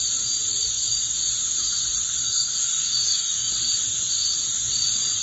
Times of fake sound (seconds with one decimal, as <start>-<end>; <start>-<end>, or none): 2.2-3.5